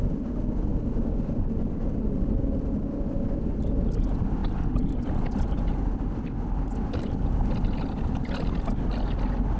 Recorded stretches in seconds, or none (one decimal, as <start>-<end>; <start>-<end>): 0.0-9.6